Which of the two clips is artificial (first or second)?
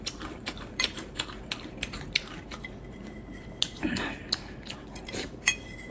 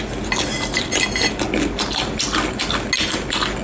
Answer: first